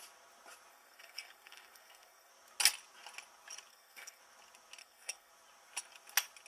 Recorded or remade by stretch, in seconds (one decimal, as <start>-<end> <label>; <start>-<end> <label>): 0.0-0.7 recorded; 0.7-2.3 remade; 2.3-3.7 recorded; 3.7-4.2 remade; 4.2-4.8 recorded; 4.8-5.3 remade; 5.3-6.5 recorded